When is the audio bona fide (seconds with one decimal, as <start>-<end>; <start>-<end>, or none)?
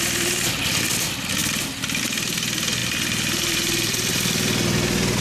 0.0-1.4; 2.0-2.8; 4.1-5.2